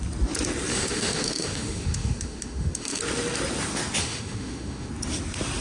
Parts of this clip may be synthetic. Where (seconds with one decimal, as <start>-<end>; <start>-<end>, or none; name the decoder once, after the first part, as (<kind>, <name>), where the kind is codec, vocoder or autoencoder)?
0.7-3.0 (autoencoder, DAC-VAE); 4.0-4.9